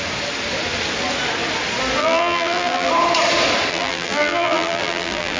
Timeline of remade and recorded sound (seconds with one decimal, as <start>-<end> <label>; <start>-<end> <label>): 0.0-2.0 recorded; 2.0-2.9 remade; 2.9-3.7 recorded; 3.7-5.4 remade